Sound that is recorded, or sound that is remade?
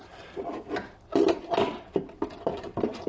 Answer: recorded